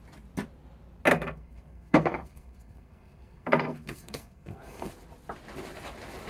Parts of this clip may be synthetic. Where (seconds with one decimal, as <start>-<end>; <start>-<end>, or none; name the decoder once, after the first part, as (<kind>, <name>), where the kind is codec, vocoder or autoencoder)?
1.1-4.9 (codec, SNAC)